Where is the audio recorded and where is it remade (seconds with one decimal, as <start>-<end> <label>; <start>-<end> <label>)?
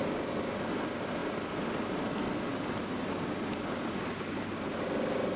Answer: 0.0-5.4 recorded